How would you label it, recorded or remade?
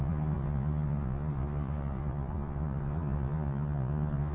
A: remade